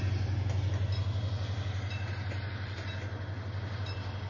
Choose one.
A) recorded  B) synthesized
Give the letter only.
A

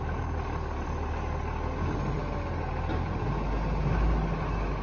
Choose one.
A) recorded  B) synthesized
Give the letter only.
A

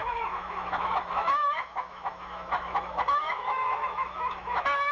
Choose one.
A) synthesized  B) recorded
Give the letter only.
A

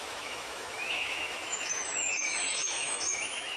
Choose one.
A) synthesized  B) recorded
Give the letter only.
A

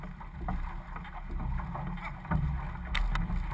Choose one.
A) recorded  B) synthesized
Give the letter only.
A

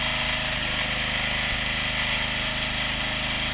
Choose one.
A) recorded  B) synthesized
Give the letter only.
A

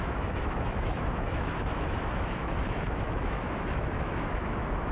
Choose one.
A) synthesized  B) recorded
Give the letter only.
A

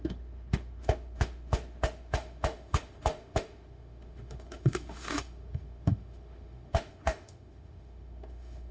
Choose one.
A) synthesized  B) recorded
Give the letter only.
A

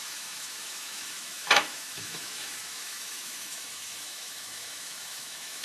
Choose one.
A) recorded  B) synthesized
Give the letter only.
B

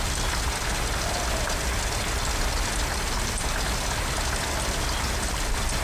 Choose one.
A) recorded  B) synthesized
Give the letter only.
A